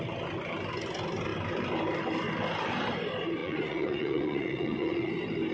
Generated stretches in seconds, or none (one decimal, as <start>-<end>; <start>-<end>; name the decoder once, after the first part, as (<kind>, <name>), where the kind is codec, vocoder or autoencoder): 3.4-5.1 (vocoder, Vocos)

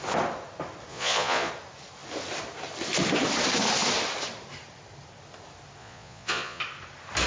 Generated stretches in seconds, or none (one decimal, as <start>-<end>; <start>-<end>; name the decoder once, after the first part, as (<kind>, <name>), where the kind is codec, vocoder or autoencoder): 0.9-1.5 (vocoder, Vocos); 5.8-6.6